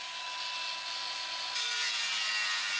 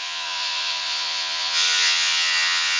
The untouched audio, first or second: first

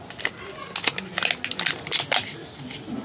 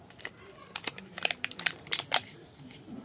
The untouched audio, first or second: first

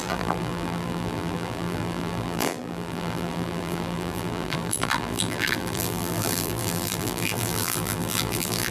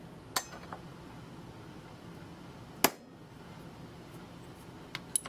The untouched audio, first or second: second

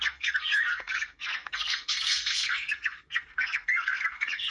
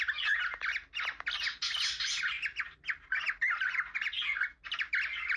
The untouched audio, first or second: second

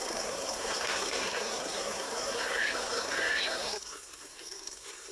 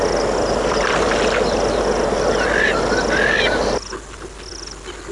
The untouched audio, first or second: second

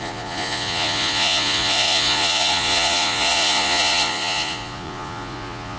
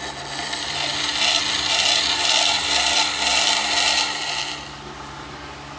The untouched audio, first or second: second